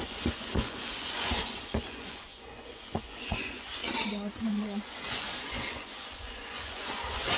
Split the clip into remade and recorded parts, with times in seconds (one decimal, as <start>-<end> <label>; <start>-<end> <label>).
0.0-3.8 remade; 3.8-4.5 recorded; 4.5-7.4 remade